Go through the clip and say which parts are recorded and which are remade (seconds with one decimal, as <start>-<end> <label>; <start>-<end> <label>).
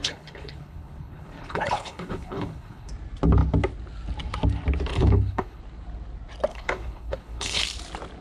0.0-2.9 remade; 2.9-4.9 recorded; 4.9-5.6 remade; 5.6-6.5 recorded; 6.5-7.6 remade; 7.6-8.2 recorded